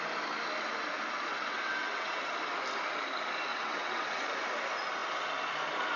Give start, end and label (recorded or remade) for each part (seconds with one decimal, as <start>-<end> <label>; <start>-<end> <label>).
0.0-1.3 recorded; 1.3-2.2 remade; 2.2-3.5 recorded; 3.5-4.2 remade; 4.2-6.0 recorded